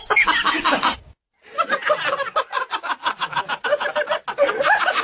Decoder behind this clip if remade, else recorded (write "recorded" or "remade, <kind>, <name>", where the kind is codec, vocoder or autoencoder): recorded